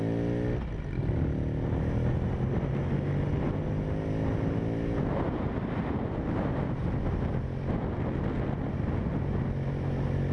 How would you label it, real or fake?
real